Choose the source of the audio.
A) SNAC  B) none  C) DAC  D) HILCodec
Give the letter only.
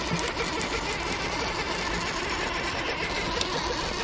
B